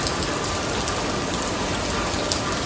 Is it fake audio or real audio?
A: real